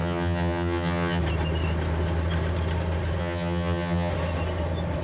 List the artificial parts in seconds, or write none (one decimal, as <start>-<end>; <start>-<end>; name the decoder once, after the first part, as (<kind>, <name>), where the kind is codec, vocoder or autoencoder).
0.0-1.2 (vocoder, HiFi-GAN); 3.2-4.1